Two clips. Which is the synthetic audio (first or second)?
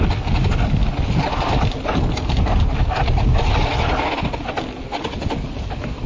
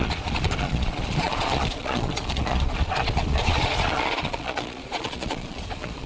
second